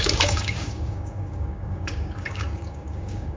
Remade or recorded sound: remade